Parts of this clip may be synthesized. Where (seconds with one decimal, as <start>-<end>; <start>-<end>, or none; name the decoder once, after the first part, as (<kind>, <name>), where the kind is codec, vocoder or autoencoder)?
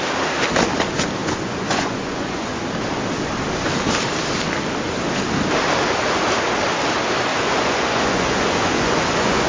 1.2-2.6 (vocoder, Vocos); 7.3-9.5